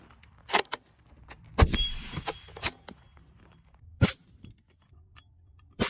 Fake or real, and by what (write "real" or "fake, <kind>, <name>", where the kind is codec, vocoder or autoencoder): fake, vocoder, BigVGAN v2